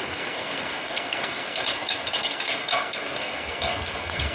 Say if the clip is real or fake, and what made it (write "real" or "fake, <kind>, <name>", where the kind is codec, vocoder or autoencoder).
fake, codec, SNAC